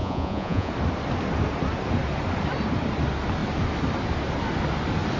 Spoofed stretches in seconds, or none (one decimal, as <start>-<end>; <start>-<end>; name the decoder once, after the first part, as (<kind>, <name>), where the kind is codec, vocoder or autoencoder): 0.0-0.7 (vocoder, Vocos)